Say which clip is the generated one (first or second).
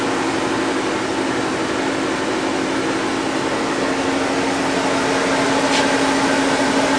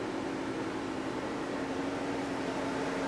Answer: second